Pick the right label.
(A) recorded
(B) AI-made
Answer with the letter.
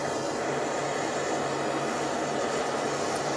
A